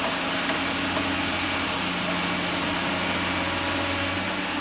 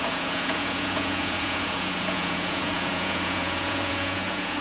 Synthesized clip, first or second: second